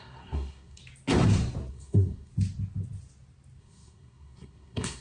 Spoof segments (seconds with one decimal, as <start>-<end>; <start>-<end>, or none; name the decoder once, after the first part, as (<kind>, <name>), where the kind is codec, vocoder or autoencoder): 0.0-0.8 (codec, SNAC); 1.7-2.3; 3.6-5.0